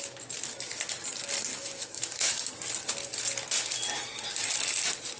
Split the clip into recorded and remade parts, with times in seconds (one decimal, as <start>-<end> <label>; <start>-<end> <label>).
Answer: 0.0-1.5 recorded; 1.5-2.5 remade; 2.5-5.2 recorded